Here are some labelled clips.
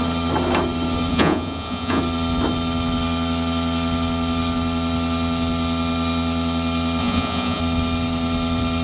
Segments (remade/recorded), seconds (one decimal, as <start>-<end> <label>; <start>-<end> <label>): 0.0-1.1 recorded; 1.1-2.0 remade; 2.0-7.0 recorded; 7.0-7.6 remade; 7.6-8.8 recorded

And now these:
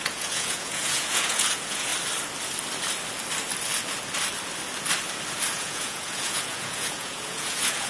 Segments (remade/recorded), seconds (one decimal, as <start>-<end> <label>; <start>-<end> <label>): 0.0-1.9 remade; 1.9-5.5 recorded; 5.5-7.9 remade

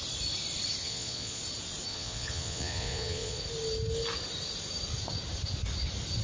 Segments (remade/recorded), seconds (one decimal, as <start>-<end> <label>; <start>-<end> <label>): 0.0-0.8 recorded; 0.8-1.4 remade; 1.4-1.9 recorded; 1.9-3.4 remade; 3.4-6.2 recorded

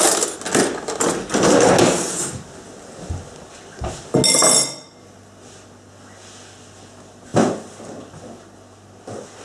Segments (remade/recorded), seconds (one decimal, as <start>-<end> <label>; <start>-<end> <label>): 0.0-9.4 recorded

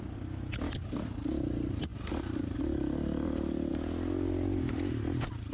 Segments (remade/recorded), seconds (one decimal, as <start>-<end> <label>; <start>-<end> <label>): 0.0-5.5 recorded